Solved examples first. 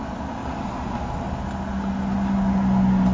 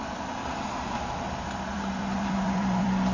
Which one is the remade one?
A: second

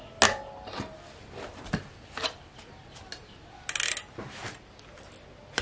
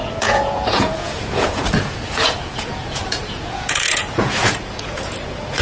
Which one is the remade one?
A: second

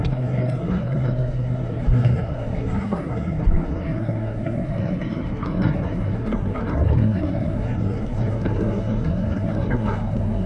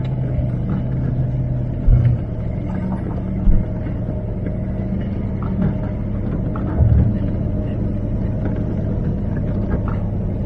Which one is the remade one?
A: first